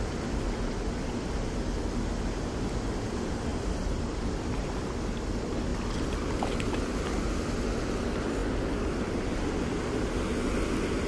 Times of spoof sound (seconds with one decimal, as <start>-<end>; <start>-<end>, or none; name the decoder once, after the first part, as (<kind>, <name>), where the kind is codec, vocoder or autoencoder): none